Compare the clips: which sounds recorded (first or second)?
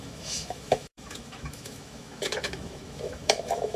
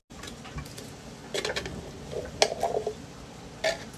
second